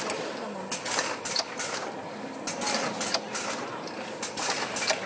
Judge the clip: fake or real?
real